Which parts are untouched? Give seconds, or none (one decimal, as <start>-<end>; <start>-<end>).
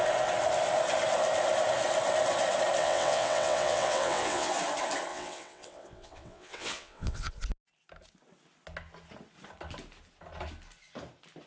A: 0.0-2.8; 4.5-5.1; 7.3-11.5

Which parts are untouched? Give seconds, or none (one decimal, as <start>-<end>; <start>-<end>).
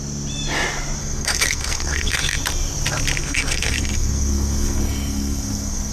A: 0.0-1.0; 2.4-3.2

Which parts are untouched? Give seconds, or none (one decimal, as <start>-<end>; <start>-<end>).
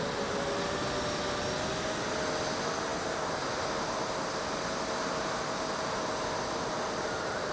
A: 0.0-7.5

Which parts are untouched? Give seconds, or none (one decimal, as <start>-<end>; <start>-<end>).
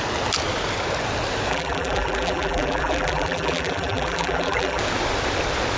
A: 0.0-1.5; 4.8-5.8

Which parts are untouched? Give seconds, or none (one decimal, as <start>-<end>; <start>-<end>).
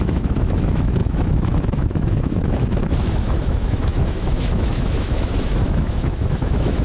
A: none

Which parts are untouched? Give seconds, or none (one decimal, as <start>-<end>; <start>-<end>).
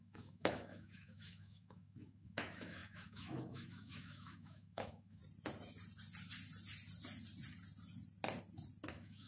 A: 5.2-8.9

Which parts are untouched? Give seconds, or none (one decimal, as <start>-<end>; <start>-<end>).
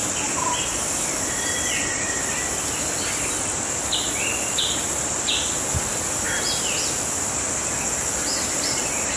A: 0.0-9.2